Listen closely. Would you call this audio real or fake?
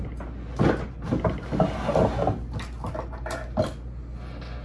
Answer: real